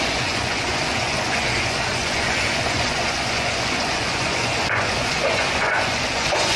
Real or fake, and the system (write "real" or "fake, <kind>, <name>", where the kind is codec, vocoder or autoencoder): fake, vocoder, Vocos